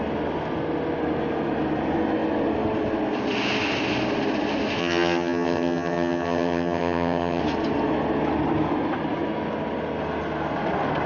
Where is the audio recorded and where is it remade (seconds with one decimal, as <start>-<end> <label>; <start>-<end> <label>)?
0.0-4.8 recorded; 4.8-7.4 remade; 7.4-11.1 recorded